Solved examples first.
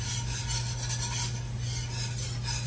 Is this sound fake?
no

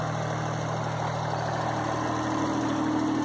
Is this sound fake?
no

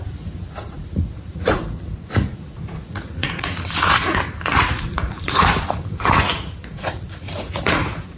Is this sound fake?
yes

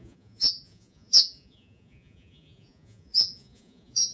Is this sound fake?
yes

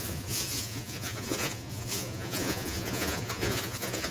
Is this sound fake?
yes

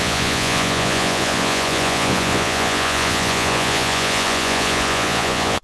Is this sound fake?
yes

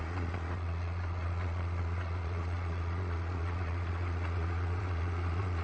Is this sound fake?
yes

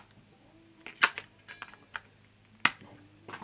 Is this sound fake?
no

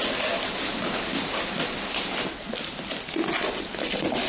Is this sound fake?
no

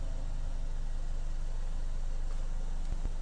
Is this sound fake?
no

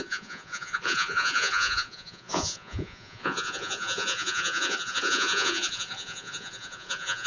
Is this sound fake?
yes